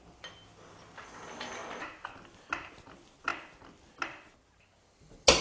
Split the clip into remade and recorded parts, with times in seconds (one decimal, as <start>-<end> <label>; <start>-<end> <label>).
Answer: 0.0-5.4 recorded